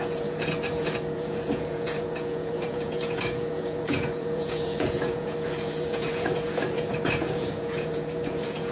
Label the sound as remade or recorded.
remade